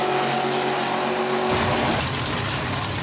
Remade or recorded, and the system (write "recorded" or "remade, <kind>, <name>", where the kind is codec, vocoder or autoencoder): recorded